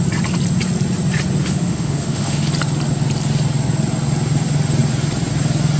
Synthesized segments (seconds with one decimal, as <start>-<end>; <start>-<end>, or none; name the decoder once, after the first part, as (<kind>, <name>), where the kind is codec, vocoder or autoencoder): 1.4-2.5 (autoencoder, DAC-VAE)